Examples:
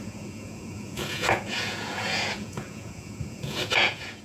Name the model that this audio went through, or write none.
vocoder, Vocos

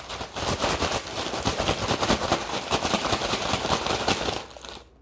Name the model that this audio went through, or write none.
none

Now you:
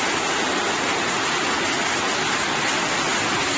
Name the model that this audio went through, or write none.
none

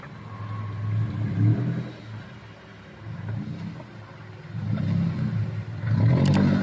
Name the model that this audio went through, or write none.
none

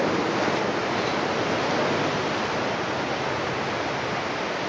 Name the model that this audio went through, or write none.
none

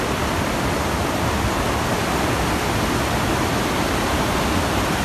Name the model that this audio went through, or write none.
none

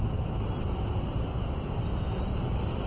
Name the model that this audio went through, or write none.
none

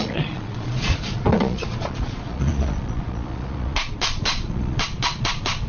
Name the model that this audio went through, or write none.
vocoder, Vocos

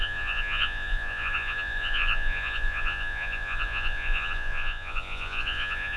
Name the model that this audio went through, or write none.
vocoder, Vocos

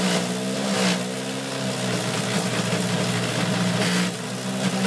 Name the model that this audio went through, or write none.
none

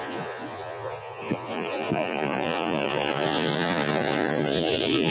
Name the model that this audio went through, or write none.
vocoder, Vocos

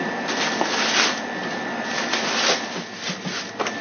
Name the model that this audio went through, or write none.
none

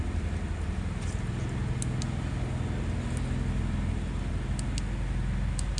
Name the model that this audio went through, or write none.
none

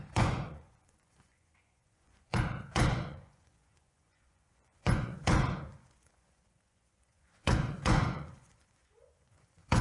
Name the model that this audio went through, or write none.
vocoder, Vocos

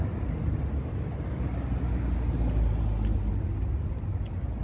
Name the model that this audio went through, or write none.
none